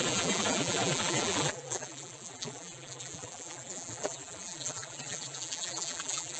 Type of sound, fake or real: fake